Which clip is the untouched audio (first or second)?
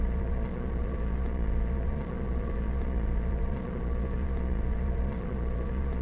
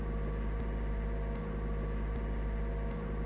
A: second